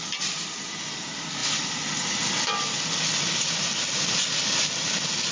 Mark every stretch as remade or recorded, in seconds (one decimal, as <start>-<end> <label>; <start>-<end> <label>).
0.0-5.3 recorded